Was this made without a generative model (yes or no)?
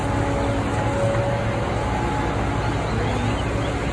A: yes